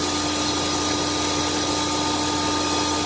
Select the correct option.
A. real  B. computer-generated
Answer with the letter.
A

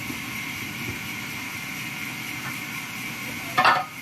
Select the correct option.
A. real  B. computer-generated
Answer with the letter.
A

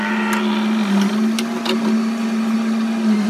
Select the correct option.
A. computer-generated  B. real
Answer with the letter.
B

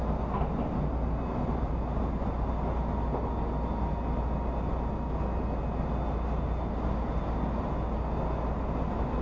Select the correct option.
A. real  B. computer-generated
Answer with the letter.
A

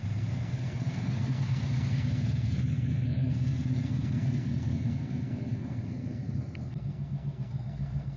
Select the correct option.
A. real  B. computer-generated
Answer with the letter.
B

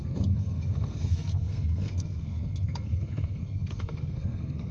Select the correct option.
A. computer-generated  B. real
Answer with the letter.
A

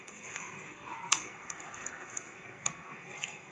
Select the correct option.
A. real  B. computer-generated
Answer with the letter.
B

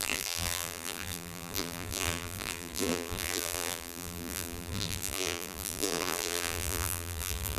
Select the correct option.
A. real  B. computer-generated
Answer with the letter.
B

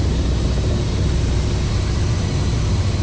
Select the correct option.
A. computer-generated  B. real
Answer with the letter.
A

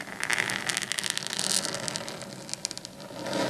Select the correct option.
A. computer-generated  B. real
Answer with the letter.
B